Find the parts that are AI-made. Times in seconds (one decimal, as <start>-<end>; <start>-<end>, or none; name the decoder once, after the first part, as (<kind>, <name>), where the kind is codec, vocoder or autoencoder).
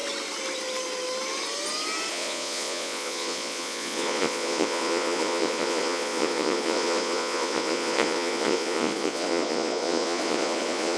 2.1-11.0 (vocoder, Vocos)